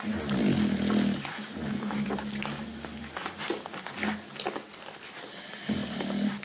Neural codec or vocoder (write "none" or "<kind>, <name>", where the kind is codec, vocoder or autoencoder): none